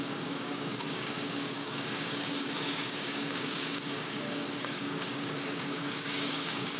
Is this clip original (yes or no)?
no